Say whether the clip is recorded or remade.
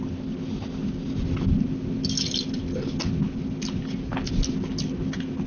recorded